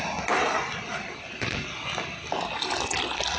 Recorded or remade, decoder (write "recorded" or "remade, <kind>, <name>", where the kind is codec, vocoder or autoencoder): recorded